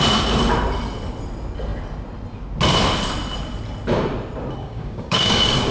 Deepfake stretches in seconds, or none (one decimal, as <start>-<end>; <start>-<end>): 4.6-5.7